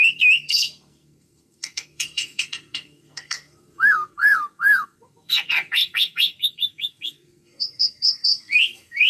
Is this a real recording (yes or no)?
no